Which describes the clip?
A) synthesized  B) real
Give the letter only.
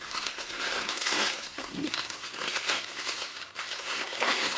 A